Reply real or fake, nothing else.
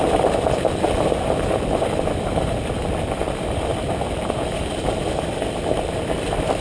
real